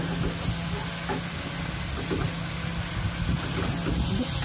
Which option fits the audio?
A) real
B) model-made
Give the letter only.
A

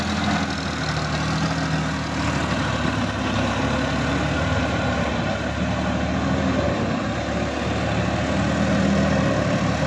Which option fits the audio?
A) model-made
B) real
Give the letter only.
B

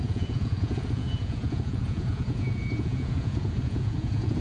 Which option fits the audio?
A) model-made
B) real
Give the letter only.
A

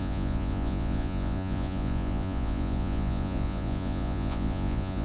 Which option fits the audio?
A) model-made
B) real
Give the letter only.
A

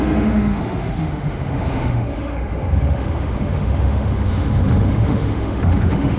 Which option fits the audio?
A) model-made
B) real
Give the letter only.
A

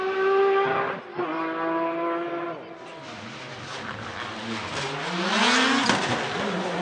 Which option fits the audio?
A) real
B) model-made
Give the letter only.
A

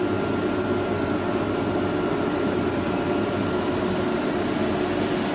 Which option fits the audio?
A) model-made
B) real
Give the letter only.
B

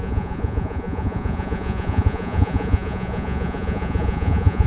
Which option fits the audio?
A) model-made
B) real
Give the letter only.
A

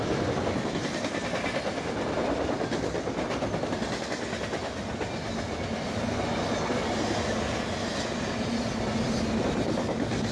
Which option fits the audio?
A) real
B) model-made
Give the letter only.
A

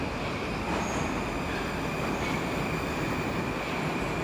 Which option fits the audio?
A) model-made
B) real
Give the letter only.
B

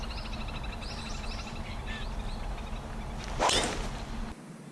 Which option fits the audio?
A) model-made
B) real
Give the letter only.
B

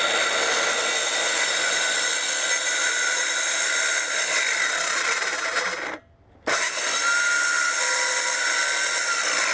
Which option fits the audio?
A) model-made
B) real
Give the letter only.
B